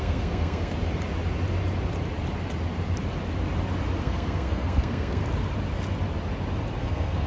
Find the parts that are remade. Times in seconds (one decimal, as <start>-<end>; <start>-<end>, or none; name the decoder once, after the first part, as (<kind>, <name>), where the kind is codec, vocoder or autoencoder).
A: 0.0-0.7 (codec, SNAC); 4.0-5.2; 6.8-7.3